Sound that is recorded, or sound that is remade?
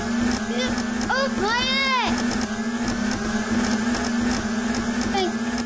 recorded